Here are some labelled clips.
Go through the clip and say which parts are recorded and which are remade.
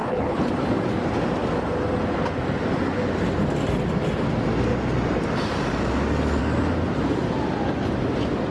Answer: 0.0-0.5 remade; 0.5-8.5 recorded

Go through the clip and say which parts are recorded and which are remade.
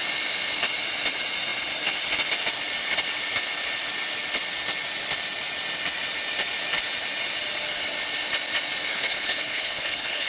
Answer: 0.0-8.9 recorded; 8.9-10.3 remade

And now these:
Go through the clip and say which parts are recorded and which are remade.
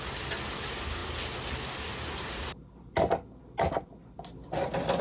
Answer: 0.0-5.0 recorded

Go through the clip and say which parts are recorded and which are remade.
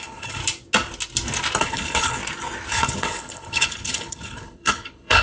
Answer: 0.0-0.4 remade; 0.4-1.6 recorded; 1.6-2.2 remade; 2.2-2.7 recorded; 2.7-5.2 remade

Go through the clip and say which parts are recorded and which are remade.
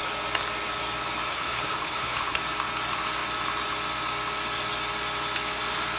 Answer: 0.0-1.3 recorded; 1.3-2.4 remade; 2.4-6.0 recorded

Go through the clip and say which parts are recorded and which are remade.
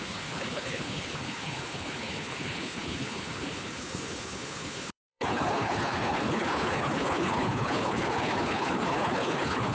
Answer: 0.0-9.7 remade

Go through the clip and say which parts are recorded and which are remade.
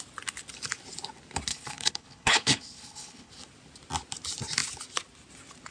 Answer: 0.0-1.5 recorded; 1.5-3.3 remade; 3.3-5.7 recorded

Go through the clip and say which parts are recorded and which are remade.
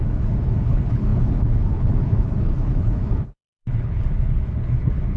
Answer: 0.0-5.2 remade